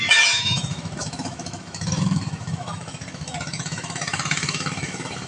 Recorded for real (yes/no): no